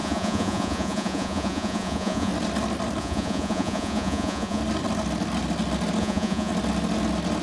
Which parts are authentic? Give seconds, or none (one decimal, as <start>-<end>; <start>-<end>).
2.3-3.0; 4.6-6.0; 6.5-7.4